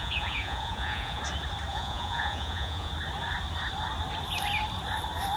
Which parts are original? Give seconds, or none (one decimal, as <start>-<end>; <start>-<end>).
1.2-1.7; 2.9-5.4